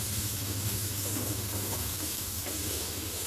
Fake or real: fake